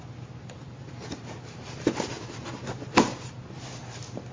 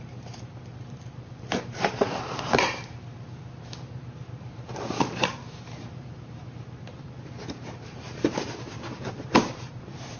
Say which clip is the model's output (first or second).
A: second